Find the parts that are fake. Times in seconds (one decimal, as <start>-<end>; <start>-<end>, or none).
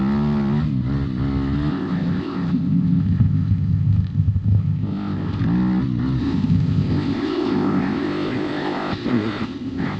1.7-5.4; 6.2-10.0